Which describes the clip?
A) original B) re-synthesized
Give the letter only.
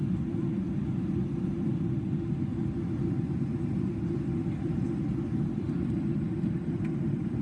B